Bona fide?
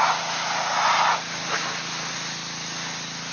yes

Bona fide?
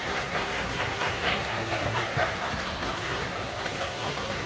no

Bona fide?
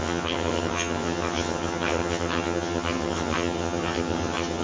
no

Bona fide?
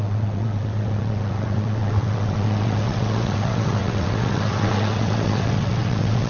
no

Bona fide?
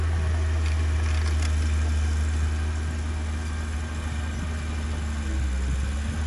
yes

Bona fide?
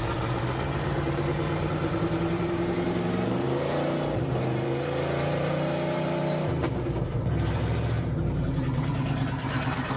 no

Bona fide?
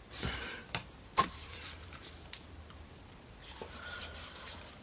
no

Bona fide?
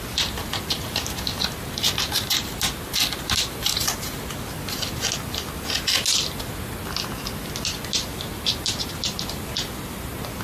yes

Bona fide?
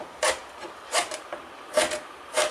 no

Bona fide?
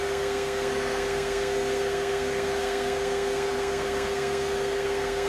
no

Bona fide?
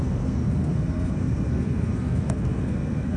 no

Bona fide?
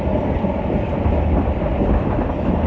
yes